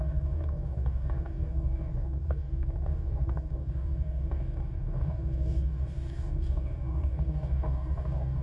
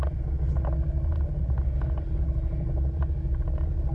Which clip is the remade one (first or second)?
first